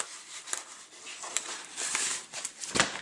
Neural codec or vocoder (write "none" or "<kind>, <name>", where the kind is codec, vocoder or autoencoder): none